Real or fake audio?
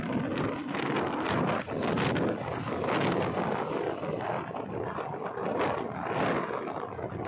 real